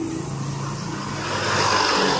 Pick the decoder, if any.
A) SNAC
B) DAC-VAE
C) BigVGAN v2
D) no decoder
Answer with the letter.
D